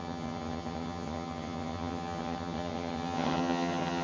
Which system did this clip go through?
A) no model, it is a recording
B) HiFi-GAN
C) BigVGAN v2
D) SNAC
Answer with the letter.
B